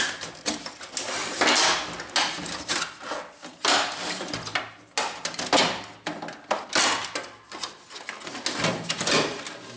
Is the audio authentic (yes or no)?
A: yes